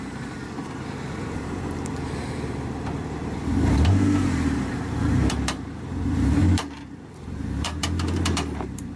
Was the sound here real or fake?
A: fake